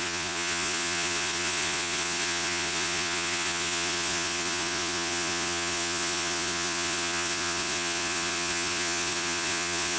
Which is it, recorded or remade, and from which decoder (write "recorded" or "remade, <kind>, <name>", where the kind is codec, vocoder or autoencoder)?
remade, vocoder, Vocos